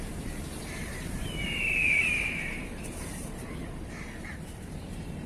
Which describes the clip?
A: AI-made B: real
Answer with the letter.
A